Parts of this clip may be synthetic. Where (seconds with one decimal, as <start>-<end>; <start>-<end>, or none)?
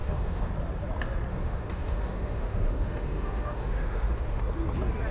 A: 0.0-0.5; 1.3-4.4